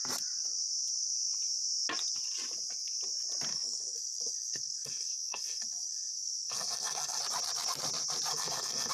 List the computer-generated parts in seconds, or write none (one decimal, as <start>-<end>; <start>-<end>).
3.5-7.2; 8.3-8.9